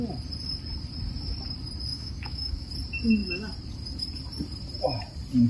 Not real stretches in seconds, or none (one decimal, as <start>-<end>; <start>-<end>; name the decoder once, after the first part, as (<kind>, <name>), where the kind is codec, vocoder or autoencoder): 1.9-2.7 (autoencoder, DAC-VAE)